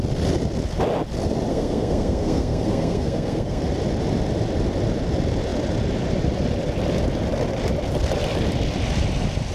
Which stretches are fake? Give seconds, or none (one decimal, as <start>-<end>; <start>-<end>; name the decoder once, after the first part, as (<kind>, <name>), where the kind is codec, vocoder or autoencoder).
1.5-3.6 (codec, SNAC)